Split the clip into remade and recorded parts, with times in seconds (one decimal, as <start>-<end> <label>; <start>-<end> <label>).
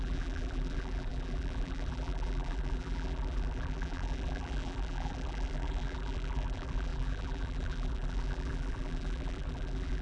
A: 0.0-10.0 remade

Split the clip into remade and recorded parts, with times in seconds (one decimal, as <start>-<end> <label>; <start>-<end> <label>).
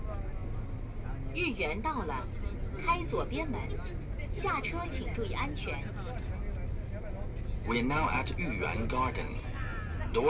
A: 0.0-10.3 recorded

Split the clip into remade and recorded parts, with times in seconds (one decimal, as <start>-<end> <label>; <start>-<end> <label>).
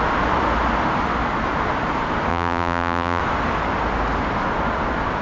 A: 0.0-2.3 recorded; 2.3-3.2 remade; 3.2-5.2 recorded